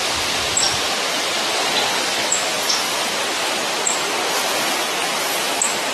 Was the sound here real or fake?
real